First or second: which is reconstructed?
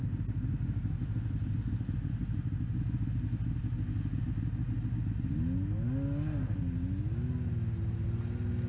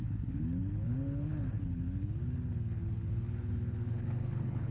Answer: second